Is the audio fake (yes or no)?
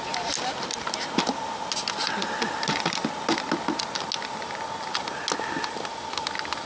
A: no